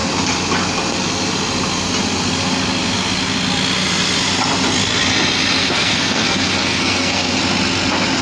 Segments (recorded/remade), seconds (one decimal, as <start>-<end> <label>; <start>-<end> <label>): 0.0-5.6 recorded; 5.6-7.4 remade; 7.4-8.2 recorded